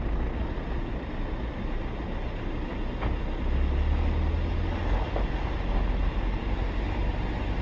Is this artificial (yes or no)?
no